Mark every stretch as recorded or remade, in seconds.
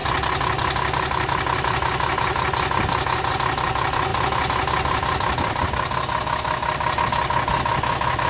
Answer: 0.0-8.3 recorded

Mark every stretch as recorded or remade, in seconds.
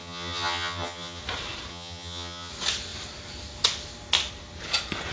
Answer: 0.0-1.2 remade; 1.2-1.7 recorded; 1.7-2.5 remade; 2.5-5.1 recorded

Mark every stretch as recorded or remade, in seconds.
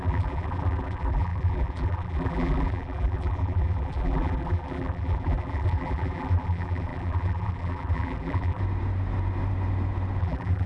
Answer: 0.0-8.6 remade; 8.6-10.2 recorded; 10.2-10.7 remade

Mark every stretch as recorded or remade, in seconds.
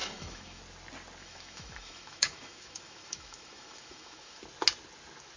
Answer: 0.0-0.6 remade; 0.6-1.2 recorded; 1.2-4.4 remade; 4.4-5.4 recorded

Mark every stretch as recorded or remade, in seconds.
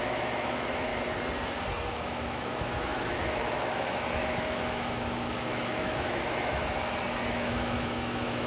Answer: 0.0-0.9 remade; 0.9-1.9 recorded; 1.9-6.6 remade; 6.6-7.3 recorded; 7.3-8.5 remade